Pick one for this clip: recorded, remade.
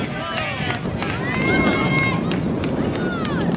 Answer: recorded